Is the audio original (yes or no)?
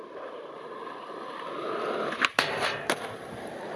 yes